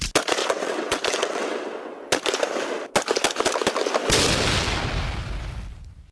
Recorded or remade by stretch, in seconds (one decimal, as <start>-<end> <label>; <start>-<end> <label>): 0.0-0.4 recorded; 0.4-2.1 remade; 2.1-6.1 recorded